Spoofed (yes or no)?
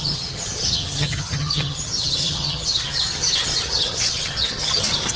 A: yes